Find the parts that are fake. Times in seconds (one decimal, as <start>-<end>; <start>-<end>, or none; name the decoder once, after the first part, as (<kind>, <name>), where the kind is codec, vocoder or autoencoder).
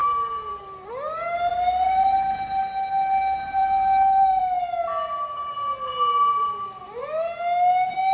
0.0-0.9 (vocoder, BigVGAN v2); 1.5-2.6; 3.6-4.6; 5.9-7.0